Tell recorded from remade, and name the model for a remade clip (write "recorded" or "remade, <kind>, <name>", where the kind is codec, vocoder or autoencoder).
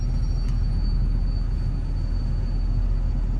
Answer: recorded